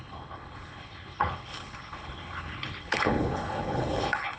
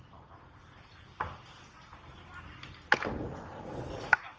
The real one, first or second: second